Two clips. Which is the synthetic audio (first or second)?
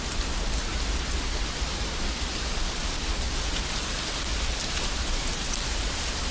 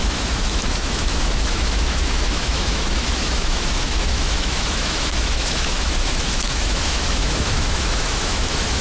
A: second